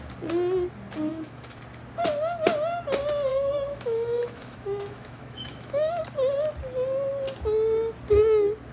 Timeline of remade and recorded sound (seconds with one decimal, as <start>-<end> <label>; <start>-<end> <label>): 0.0-1.1 recorded; 1.1-1.6 remade; 1.6-3.3 recorded; 3.3-6.0 remade; 6.0-8.7 recorded